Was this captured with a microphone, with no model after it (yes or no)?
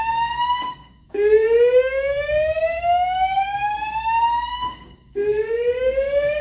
no